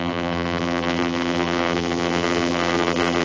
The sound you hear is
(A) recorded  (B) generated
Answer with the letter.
B